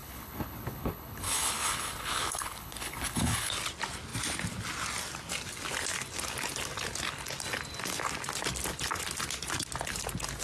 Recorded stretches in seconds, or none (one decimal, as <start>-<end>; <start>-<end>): 3.5-10.4